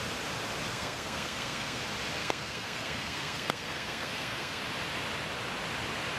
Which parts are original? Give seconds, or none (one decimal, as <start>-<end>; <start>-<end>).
0.0-0.7; 1.8-2.2; 4.6-6.2